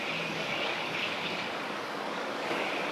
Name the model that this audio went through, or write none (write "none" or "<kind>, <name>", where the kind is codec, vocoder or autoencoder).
codec, DAC